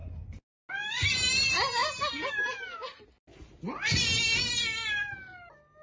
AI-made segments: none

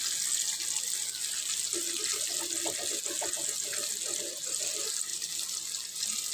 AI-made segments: none

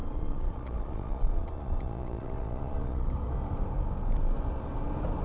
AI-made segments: 0.0-3.1 (vocoder, Vocos)

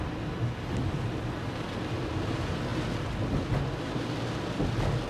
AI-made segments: none

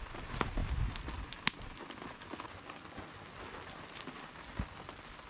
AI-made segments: none

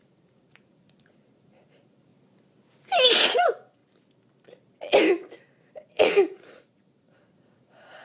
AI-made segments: 0.0-2.1 (vocoder, Vocos); 3.1-3.8; 5.6-8.0